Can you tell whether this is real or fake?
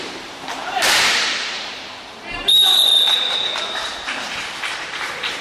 fake